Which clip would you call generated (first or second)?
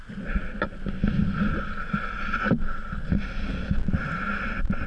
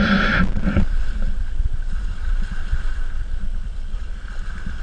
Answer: second